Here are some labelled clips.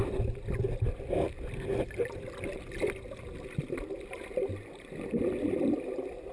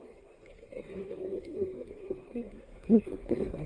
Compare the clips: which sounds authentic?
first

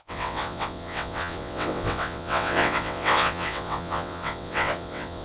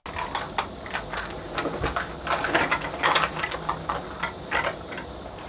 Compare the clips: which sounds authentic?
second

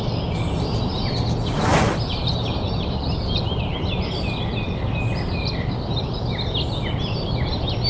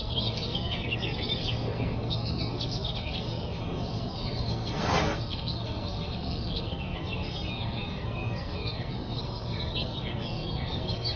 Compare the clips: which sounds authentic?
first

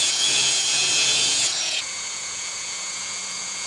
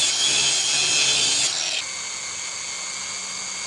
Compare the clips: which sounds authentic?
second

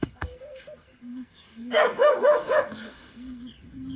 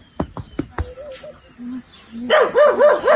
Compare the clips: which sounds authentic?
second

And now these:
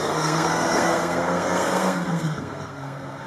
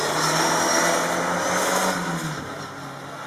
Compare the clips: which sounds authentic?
second